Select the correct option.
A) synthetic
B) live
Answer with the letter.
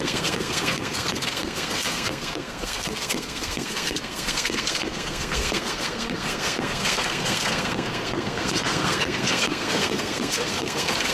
A